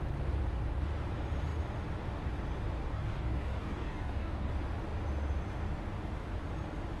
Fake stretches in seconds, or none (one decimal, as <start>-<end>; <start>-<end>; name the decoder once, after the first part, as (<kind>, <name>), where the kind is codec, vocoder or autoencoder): 2.8-4.5 (codec, DAC)